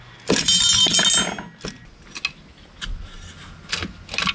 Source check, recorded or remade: recorded